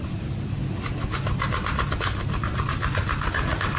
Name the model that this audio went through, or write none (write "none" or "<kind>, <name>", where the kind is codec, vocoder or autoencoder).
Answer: none